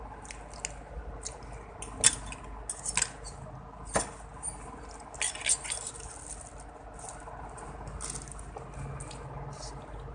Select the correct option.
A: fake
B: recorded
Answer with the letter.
B